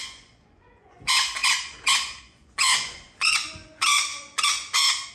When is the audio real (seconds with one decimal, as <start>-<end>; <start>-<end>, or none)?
none